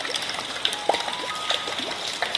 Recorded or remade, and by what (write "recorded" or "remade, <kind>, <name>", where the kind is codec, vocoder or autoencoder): recorded